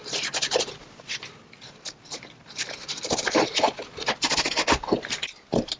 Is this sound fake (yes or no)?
no